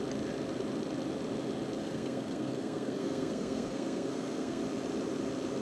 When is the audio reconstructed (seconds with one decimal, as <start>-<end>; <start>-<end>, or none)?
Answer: 1.8-4.6